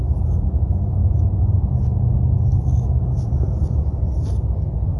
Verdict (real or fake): real